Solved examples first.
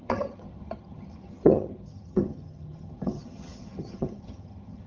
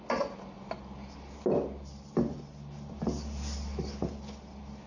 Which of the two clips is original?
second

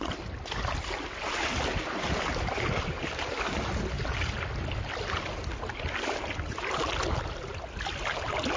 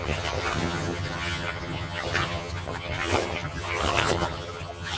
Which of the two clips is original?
first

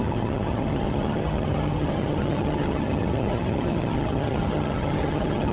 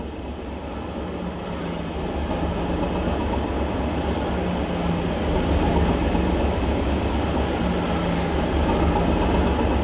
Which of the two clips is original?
second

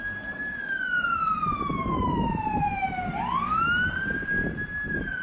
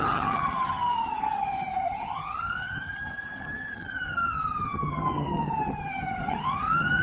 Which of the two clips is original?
first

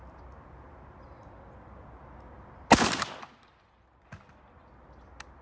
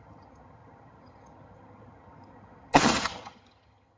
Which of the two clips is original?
first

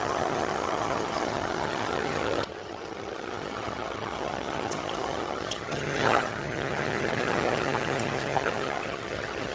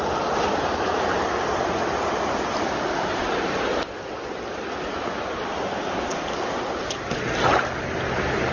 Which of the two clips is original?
second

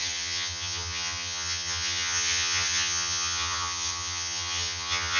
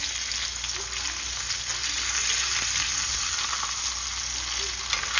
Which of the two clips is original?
second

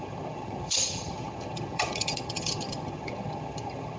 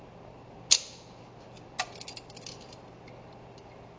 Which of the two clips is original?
second